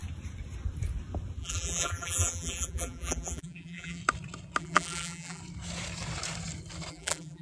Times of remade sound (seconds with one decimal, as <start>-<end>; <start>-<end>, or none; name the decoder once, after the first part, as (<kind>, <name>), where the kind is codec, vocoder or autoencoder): 1.4-4.0 (vocoder, BigVGAN v2); 4.6-5.4; 6.9-7.4